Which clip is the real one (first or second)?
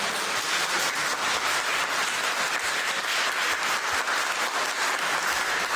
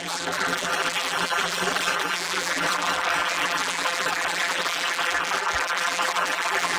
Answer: first